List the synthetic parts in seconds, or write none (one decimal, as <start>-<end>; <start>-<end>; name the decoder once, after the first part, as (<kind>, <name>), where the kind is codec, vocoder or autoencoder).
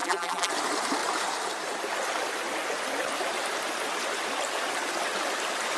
0.0-0.5 (vocoder, BigVGAN v2)